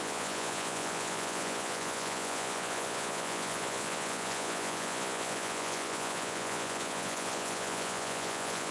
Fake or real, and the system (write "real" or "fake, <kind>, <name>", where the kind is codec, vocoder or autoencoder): fake, vocoder, Vocos